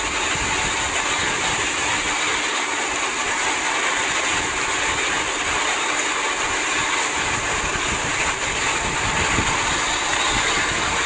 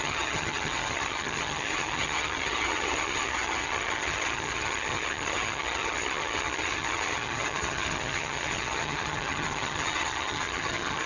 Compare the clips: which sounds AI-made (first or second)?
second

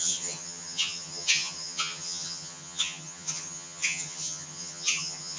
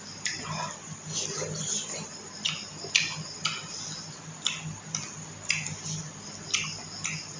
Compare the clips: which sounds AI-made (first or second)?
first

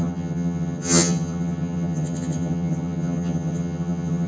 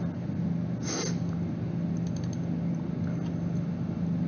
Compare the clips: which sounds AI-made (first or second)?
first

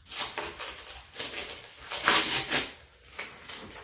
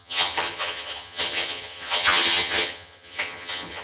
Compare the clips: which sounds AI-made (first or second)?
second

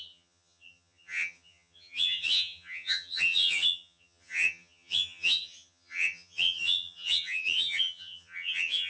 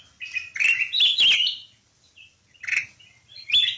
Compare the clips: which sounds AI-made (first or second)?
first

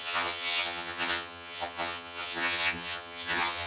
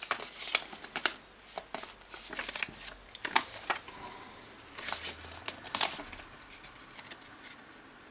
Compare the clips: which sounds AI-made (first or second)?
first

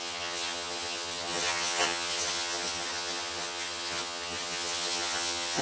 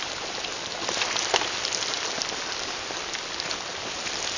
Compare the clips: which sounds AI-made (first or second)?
first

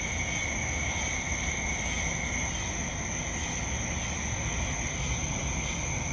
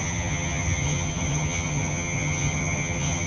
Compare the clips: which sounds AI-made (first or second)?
second